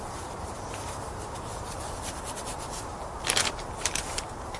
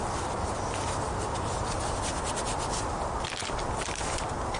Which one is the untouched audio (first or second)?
second